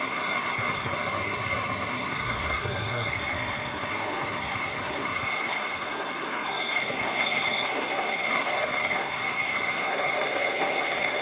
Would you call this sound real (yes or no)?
no